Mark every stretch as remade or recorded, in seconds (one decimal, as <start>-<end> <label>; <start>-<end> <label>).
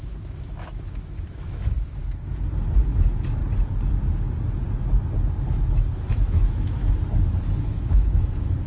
0.0-2.0 remade; 2.0-2.8 recorded; 2.8-3.4 remade; 3.4-6.1 recorded; 6.1-6.8 remade; 6.8-7.6 recorded; 7.6-8.7 remade